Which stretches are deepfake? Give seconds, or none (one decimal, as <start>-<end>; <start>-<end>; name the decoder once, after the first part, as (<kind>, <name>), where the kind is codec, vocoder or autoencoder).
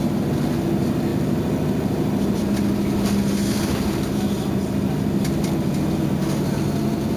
none